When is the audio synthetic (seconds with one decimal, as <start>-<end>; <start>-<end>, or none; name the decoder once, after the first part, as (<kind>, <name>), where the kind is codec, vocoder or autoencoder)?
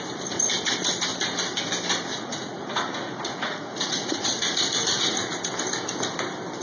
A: 2.1-5.4 (vocoder, Vocos)